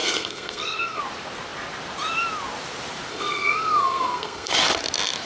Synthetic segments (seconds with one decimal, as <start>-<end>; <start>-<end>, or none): 0.0-1.0; 3.1-4.5